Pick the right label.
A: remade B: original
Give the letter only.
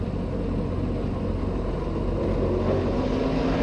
B